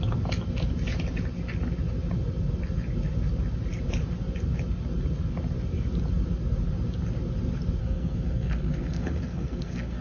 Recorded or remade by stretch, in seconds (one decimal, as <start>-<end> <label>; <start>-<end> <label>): 0.0-7.8 recorded; 7.8-10.0 remade